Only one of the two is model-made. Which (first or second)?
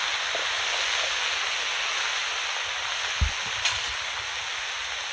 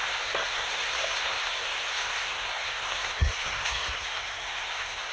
second